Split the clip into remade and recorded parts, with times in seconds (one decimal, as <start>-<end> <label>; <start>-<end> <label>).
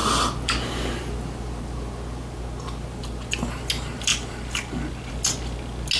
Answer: 0.0-6.0 recorded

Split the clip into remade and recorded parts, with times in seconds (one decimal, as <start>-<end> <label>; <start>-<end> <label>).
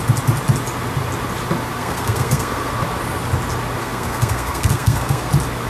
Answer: 0.0-1.8 recorded; 1.8-2.7 remade; 2.7-3.8 recorded; 3.8-5.3 remade; 5.3-5.7 recorded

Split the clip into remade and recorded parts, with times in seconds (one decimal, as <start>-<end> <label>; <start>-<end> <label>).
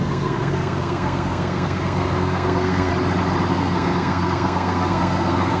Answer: 0.0-2.9 remade; 2.9-3.5 recorded; 3.5-5.6 remade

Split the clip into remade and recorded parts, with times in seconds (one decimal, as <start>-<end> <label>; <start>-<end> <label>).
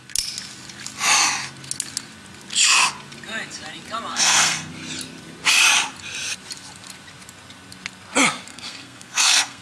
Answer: 0.0-4.1 recorded; 4.1-4.7 remade; 4.7-8.5 recorded; 8.5-9.6 remade